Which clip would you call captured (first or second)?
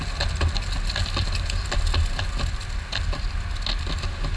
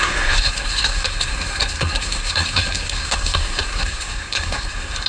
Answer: first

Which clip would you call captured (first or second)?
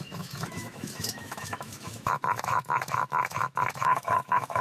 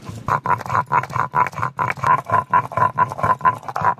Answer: second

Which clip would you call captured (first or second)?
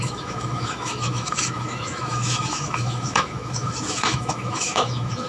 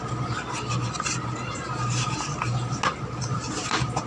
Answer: second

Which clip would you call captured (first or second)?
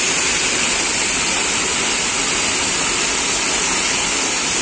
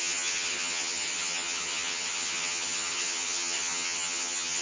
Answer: first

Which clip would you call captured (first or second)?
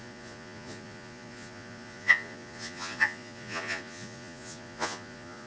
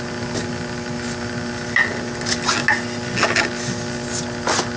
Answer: second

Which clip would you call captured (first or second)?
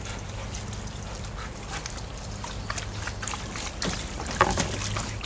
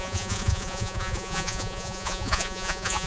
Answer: first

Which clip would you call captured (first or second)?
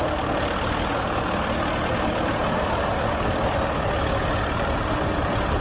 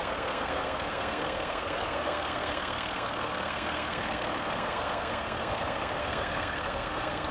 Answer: first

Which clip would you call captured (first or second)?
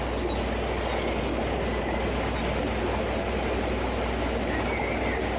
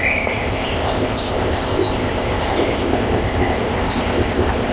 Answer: first